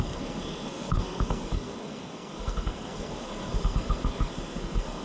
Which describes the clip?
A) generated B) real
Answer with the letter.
A